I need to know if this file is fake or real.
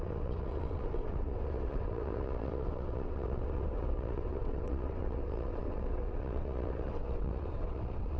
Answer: fake